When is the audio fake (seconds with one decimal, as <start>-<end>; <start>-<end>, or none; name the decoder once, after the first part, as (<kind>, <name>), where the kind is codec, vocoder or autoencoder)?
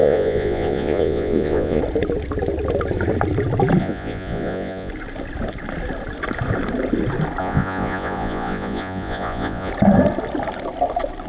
0.0-1.8 (vocoder, Vocos); 3.8-4.9; 7.4-9.7